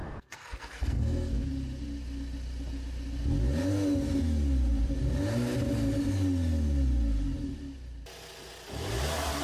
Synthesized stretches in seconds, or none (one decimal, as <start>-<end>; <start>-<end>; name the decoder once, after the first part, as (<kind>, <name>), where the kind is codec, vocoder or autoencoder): 0.0-1.5 (codec, SNAC)